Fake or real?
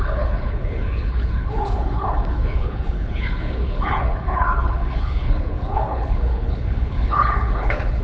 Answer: fake